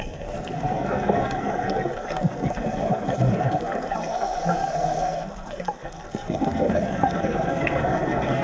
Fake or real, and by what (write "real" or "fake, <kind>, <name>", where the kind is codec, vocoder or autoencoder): fake, codec, SNAC